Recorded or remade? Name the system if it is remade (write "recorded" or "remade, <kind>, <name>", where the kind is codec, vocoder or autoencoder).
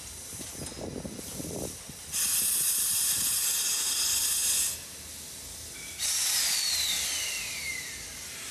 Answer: recorded